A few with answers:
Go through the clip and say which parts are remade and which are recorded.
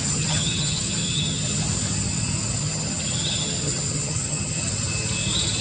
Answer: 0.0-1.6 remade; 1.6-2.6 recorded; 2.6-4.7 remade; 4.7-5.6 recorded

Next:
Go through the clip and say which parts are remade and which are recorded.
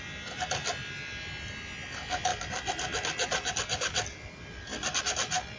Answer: 0.0-5.6 recorded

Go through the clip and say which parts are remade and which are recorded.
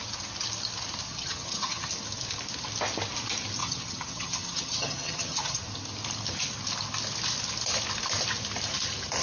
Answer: 0.0-1.1 recorded; 1.1-1.9 remade; 1.9-3.6 recorded; 3.6-5.6 remade; 5.6-9.2 recorded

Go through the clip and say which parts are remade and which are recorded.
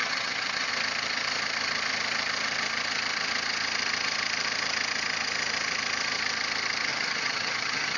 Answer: 0.0-0.7 remade; 0.7-6.9 recorded; 6.9-8.0 remade